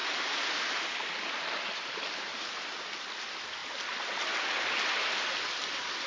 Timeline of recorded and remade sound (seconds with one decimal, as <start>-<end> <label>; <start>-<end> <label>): 0.0-6.1 recorded